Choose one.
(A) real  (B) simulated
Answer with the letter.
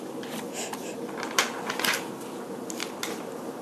A